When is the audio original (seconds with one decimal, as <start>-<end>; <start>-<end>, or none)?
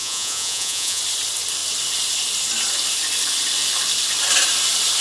1.0-5.0